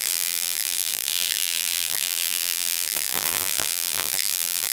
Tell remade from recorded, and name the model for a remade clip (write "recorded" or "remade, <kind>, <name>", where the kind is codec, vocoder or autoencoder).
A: remade, vocoder, BigVGAN v2